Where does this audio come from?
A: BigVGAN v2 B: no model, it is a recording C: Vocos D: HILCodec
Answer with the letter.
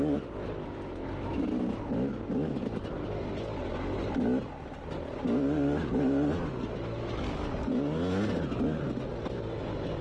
B